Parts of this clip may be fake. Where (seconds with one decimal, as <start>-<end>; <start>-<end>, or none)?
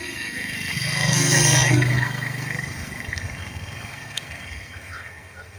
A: 0.0-5.6